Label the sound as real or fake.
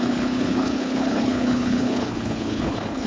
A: fake